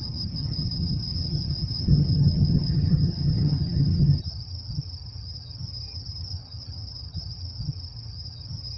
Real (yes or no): no